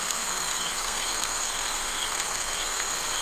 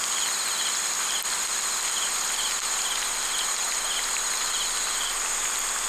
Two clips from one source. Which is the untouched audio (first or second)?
second